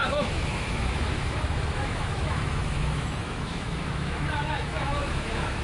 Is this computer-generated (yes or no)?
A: yes